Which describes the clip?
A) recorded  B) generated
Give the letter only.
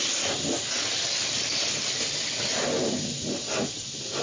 A